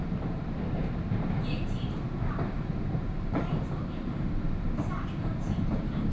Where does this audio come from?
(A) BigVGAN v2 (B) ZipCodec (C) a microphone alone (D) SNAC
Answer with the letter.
A